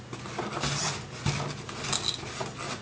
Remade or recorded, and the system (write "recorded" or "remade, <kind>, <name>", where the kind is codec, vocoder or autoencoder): recorded